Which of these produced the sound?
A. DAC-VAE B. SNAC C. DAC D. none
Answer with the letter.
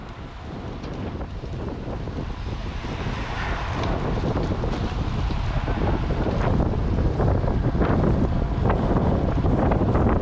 D